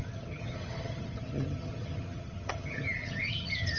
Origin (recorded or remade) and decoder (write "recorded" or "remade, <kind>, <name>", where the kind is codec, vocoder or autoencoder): remade, vocoder, HiFi-GAN